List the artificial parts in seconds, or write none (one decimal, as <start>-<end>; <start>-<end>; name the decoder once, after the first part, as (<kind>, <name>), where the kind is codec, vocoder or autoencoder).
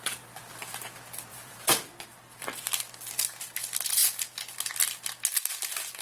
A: 1.3-2.0 (vocoder, BigVGAN v2)